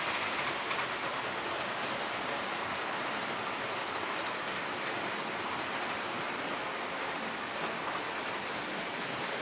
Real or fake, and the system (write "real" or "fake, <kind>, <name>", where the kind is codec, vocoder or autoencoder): real